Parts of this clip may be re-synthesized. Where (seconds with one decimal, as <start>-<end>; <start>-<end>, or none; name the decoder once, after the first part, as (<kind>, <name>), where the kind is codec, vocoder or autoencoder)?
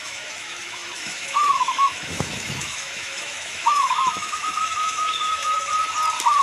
0.0-5.7 (autoencoder, DAC-VAE)